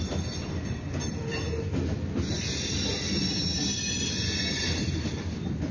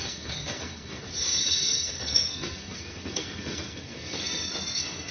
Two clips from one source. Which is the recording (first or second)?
first